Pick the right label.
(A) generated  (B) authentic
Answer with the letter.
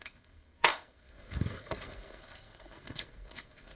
A